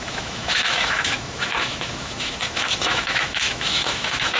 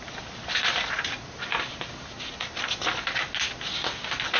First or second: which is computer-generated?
first